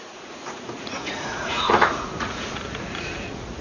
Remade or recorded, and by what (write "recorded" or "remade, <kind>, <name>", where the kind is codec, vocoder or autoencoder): remade, vocoder, Vocos